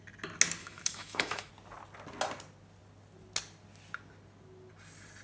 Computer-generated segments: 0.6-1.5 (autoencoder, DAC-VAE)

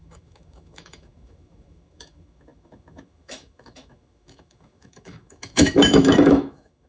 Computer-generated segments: 0.0-6.9 (autoencoder, DAC-VAE)